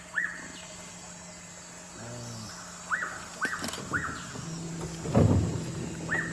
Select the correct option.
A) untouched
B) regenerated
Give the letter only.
A